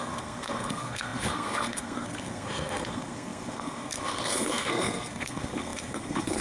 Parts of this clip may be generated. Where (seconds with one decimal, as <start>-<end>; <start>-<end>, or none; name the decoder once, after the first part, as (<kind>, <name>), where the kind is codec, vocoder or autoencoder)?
0.0-6.4 (codec, SNAC)